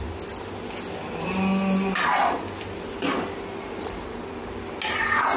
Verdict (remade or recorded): recorded